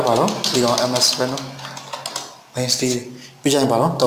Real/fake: real